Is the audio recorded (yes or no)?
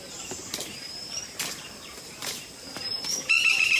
no